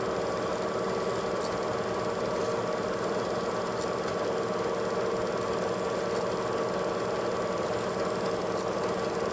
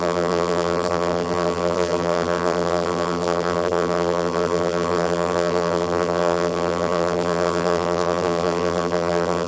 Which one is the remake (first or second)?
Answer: second